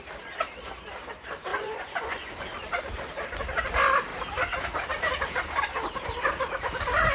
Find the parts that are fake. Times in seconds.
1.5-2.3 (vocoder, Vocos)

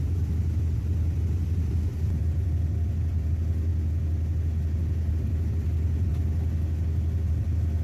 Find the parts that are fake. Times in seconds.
0.0-3.7 (vocoder, BigVGAN v2); 5.1-6.1; 7.3-7.8